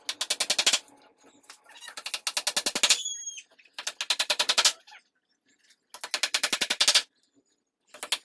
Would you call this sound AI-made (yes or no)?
no